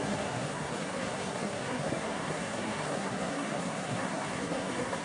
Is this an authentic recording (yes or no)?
no